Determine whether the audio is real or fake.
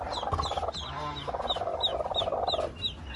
real